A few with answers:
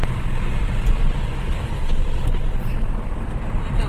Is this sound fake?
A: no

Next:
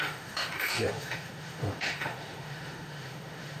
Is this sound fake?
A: yes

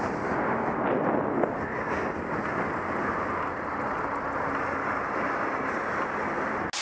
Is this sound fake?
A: no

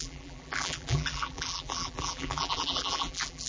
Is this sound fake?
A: yes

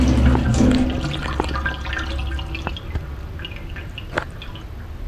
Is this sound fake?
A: no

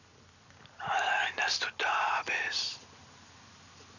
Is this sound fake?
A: no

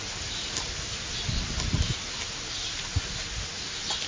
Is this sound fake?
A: no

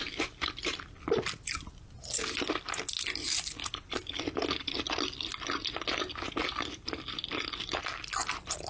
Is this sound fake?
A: no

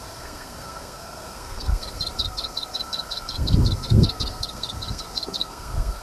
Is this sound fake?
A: yes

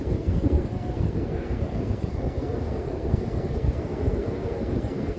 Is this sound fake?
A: yes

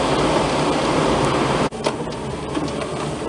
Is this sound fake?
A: no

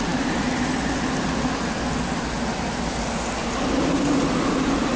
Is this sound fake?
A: no